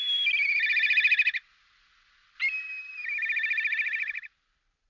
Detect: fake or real real